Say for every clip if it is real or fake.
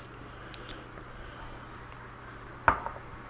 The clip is real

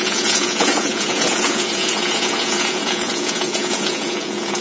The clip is fake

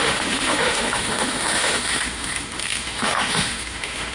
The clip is fake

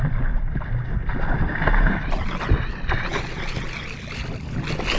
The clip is real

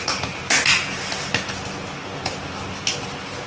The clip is real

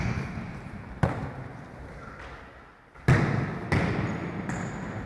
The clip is real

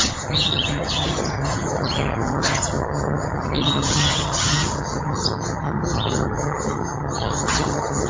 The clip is fake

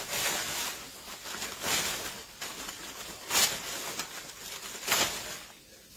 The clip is real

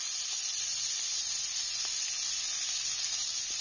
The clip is real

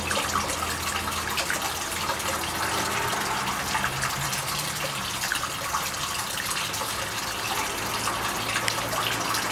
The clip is real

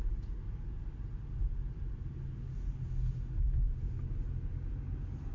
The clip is real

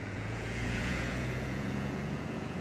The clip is fake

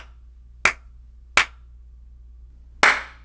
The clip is real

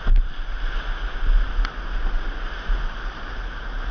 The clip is real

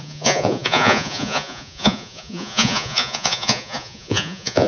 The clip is fake